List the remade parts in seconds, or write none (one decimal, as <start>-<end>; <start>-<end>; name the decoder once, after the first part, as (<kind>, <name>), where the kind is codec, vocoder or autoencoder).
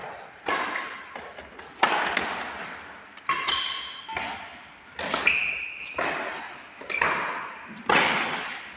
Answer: none